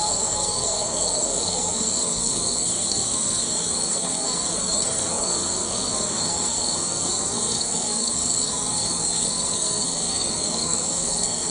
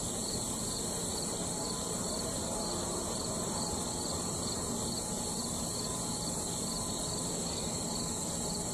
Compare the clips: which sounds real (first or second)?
second